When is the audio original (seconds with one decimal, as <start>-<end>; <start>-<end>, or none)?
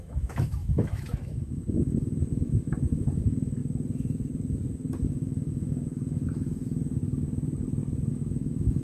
3.6-5.1; 7.0-8.1